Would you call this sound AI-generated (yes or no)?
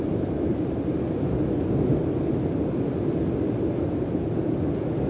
no